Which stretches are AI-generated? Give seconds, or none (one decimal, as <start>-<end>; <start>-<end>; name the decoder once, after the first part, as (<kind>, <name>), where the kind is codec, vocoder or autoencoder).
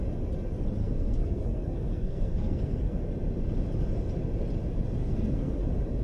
0.8-3.0 (codec, SNAC); 5.0-5.5